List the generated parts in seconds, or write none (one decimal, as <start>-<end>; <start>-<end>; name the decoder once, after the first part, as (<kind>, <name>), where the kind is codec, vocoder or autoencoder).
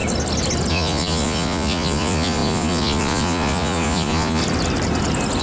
0.7-4.4 (vocoder, Vocos)